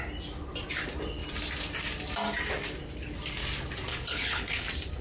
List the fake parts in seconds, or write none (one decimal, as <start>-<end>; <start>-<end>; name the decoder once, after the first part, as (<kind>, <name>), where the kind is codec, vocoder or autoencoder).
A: 3.9-4.6 (codec, HILCodec)